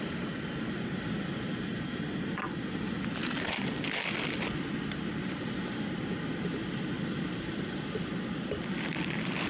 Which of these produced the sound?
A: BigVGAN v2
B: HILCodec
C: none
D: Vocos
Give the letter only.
C